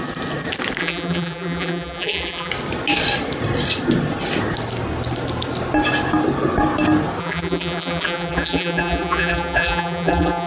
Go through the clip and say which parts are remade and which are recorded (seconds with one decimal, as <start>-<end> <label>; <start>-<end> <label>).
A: 0.0-0.8 recorded; 0.8-2.5 remade; 2.5-7.2 recorded; 7.2-10.5 remade